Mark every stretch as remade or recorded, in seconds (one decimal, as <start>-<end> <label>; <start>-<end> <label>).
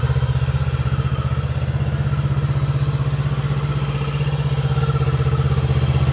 0.0-6.1 recorded